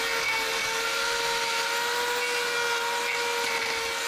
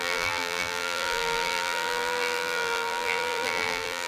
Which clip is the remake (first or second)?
second